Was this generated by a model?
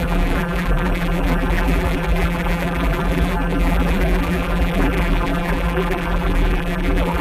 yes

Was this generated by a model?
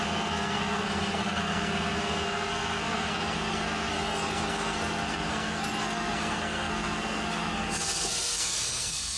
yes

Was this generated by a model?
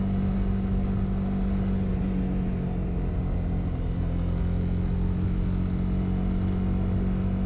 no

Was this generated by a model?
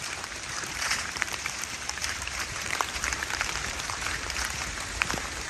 yes